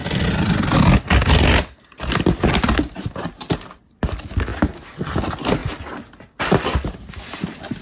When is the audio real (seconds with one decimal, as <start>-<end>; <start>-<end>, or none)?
0.0-7.8